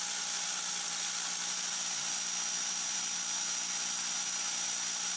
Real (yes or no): yes